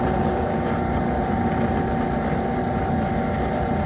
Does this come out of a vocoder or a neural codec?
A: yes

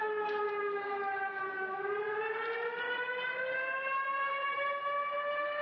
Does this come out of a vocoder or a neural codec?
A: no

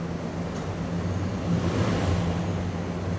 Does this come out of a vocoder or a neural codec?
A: no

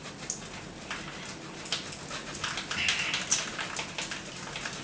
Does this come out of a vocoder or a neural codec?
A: no